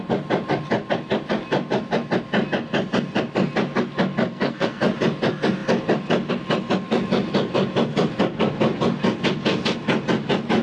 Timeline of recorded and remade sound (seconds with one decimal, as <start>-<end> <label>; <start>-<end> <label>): 0.0-4.3 recorded; 4.3-4.8 remade; 4.8-10.6 recorded